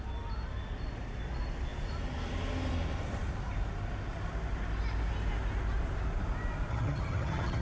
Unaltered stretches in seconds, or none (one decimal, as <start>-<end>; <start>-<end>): 0.0-6.7